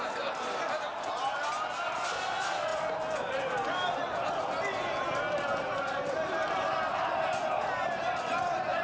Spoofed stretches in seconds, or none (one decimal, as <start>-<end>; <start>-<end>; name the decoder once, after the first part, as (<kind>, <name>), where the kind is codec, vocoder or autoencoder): none